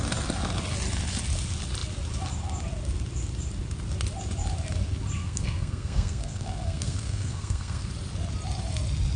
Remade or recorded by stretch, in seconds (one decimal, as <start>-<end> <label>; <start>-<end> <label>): 0.0-5.2 recorded; 5.2-7.9 remade; 7.9-9.2 recorded